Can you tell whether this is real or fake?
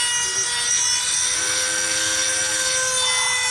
real